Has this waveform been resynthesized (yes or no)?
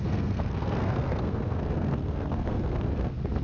yes